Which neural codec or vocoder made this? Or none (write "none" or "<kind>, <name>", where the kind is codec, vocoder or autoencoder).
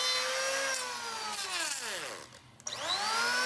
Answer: none